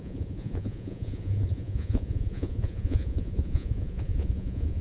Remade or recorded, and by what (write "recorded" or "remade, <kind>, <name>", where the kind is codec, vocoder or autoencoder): remade, vocoder, Vocos